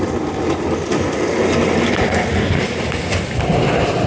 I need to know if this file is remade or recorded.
recorded